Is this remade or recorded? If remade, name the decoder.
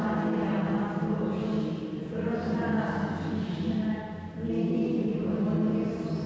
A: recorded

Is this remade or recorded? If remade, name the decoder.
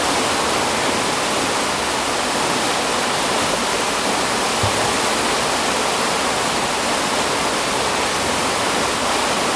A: recorded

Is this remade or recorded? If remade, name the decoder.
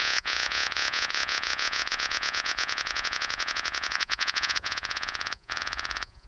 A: remade, vocoder, Vocos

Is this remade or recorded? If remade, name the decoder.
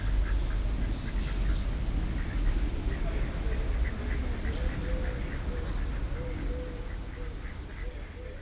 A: recorded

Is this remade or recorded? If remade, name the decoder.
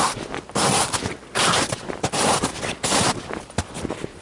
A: recorded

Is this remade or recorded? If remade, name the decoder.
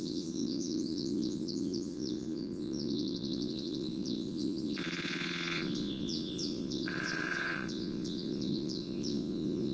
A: remade, vocoder, Vocos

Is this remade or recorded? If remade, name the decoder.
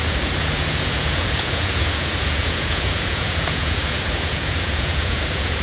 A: remade, vocoder, Vocos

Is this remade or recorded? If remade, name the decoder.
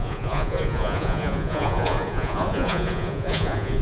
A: remade, vocoder, Vocos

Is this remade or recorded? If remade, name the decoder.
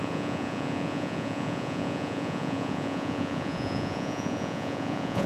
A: remade, vocoder, Vocos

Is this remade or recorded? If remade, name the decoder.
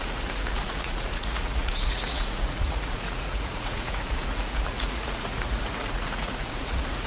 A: remade, vocoder, Vocos